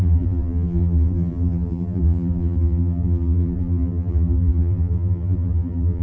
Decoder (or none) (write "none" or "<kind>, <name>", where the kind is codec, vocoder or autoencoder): vocoder, BigVGAN v2